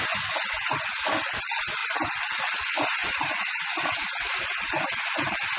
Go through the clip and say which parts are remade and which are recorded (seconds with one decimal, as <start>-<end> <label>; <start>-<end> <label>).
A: 0.0-5.6 recorded